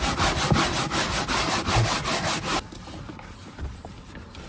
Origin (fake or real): real